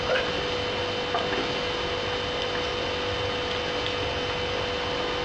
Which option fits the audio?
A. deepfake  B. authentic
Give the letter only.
B